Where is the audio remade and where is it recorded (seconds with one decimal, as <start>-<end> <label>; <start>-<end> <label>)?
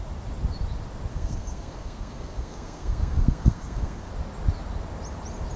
0.0-1.1 recorded; 1.1-4.1 remade; 4.1-5.6 recorded